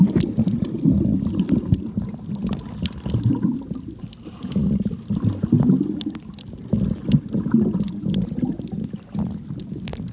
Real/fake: real